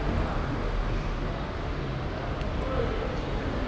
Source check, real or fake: real